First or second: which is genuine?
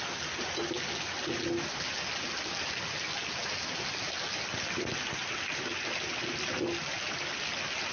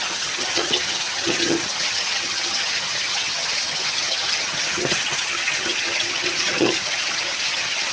first